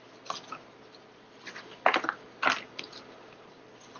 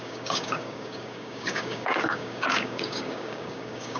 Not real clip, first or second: second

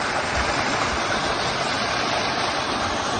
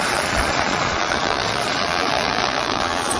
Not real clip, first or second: second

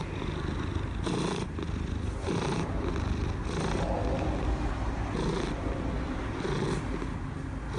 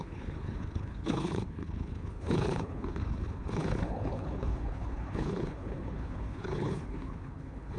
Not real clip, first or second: second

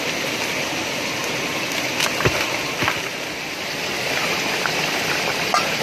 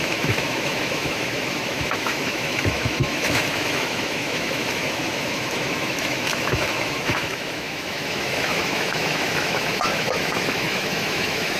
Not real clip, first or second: second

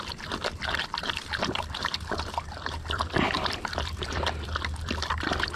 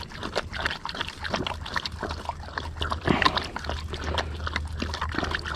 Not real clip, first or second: first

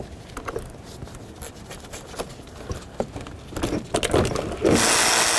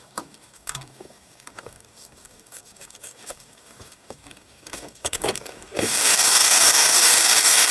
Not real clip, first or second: second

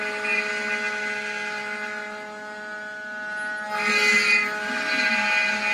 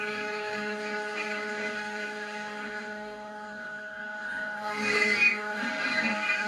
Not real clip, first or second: second